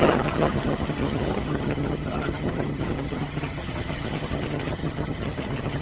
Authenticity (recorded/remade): remade